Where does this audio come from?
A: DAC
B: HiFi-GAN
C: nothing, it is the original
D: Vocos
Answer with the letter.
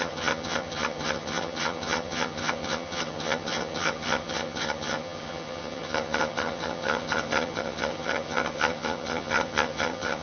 B